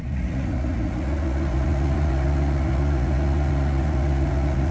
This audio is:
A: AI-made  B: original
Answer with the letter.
A